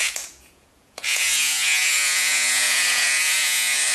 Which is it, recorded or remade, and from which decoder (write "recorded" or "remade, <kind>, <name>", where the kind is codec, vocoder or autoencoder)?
remade, vocoder, Vocos